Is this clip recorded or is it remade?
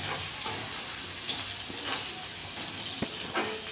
recorded